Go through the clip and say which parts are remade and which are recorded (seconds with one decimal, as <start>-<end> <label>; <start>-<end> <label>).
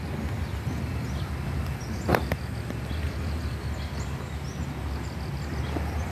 0.0-6.1 recorded